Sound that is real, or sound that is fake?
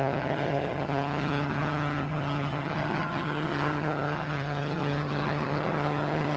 fake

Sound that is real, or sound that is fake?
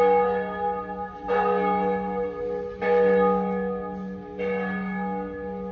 real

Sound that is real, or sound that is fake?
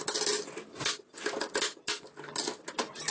real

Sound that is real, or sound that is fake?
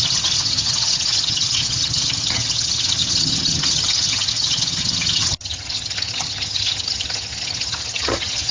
fake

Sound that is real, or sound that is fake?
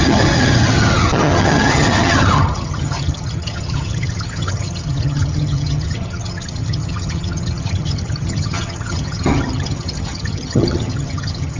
fake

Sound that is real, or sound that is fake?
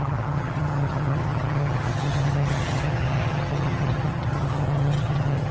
fake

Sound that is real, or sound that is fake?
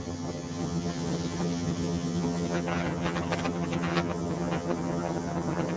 fake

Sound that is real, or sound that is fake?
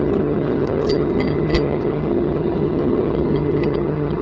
fake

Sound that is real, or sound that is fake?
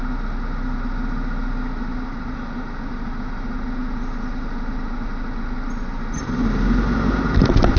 real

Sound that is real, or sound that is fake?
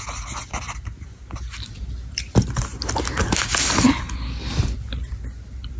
real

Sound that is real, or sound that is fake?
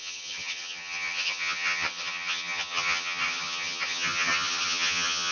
fake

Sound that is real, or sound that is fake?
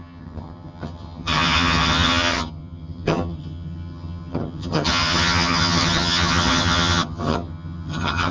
fake